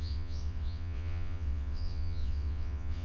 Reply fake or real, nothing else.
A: fake